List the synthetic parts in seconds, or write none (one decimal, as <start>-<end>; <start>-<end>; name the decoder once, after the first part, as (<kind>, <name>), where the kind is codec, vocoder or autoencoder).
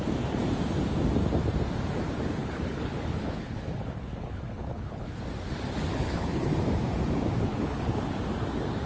2.4-5.2 (codec, HILCodec); 5.9-6.5; 7.5-8.2